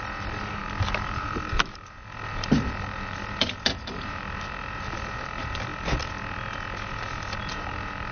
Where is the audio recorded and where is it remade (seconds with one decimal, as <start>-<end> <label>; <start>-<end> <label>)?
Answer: 0.0-5.7 remade; 5.7-7.4 recorded; 7.4-8.1 remade